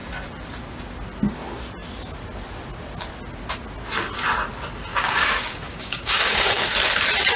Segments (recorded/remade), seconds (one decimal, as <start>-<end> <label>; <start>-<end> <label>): 0.0-4.9 recorded; 4.9-6.7 remade; 6.7-7.4 recorded